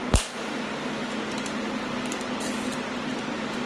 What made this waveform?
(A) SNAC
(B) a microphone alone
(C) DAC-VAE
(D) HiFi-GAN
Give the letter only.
B